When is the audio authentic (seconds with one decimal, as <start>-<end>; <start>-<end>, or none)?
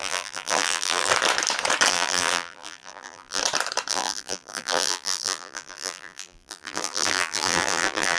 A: 1.1-1.9; 3.4-3.9